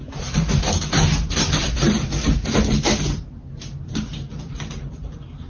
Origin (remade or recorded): recorded